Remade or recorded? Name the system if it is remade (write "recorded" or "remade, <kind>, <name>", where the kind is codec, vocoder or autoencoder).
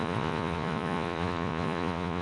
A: remade, vocoder, Vocos